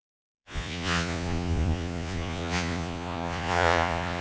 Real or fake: fake